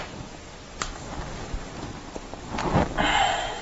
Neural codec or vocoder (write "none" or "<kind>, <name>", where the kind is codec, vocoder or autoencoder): none